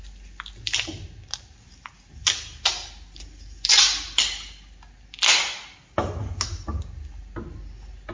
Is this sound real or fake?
real